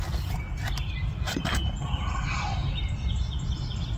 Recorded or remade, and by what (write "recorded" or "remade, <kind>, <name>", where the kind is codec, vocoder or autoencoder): recorded